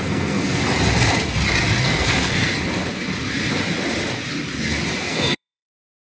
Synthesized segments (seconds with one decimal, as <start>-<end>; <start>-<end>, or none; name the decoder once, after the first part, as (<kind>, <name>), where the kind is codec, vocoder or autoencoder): 0.0-0.6 (codec, SNAC); 1.8-2.5; 5.0-6.0